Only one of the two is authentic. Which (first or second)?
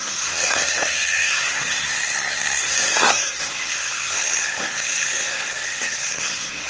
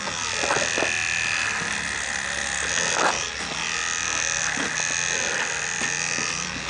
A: second